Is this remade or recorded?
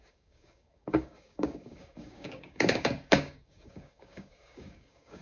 remade